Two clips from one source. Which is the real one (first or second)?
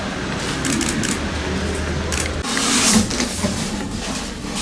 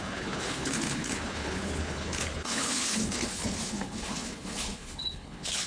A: first